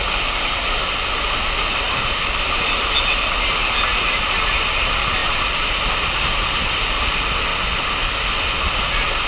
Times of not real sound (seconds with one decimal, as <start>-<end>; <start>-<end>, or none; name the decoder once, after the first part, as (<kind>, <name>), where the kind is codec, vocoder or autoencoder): none